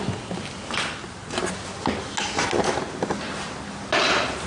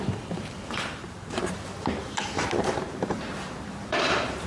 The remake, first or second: second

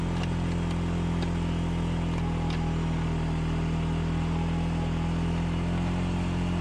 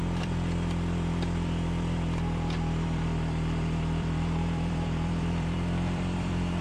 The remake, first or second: second